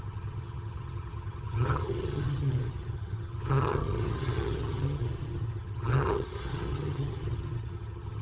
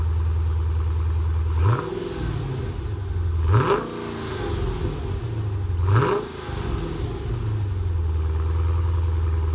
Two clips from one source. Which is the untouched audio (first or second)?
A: second